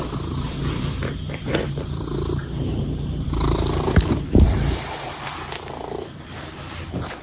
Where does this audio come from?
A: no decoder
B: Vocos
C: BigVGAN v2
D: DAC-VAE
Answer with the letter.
C